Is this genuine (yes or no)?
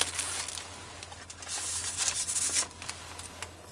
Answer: yes